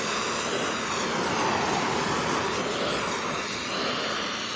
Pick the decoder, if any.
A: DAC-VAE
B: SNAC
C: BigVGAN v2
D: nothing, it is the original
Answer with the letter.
D